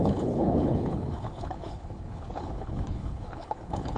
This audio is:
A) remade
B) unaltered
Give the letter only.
A